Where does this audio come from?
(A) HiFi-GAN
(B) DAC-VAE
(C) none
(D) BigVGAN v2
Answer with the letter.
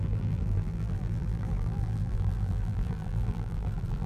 D